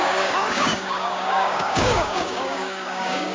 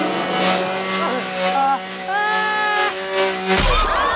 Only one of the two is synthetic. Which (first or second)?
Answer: first